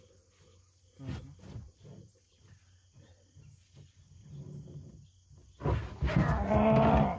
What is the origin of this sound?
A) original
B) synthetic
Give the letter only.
A